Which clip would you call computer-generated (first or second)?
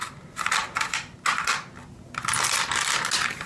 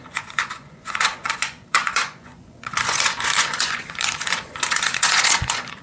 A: second